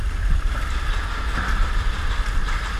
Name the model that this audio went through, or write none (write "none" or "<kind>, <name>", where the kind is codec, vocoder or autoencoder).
none